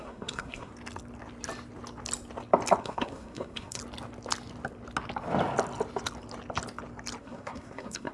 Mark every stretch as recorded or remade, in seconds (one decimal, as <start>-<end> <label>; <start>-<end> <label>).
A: 0.0-0.7 remade; 0.7-2.8 recorded; 2.8-3.8 remade; 3.8-7.2 recorded; 7.2-8.1 remade